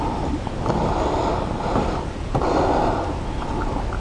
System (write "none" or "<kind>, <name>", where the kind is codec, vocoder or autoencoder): none